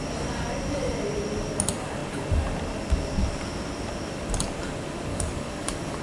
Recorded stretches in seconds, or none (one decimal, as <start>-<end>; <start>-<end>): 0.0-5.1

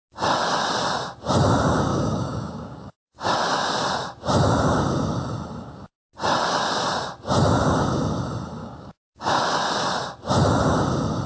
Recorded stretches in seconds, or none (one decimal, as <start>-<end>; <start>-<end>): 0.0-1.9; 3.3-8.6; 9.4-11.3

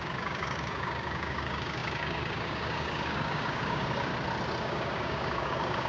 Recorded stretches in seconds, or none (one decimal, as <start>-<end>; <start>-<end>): 4.1-4.6